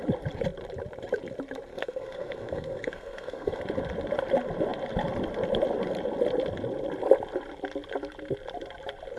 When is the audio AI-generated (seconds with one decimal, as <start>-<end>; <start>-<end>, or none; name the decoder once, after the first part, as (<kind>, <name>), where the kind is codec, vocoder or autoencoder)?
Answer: 1.7-3.6 (codec, SNAC)